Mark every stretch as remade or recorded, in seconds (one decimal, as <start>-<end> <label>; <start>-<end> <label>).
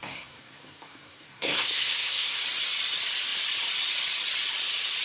0.0-2.4 remade; 2.4-5.0 recorded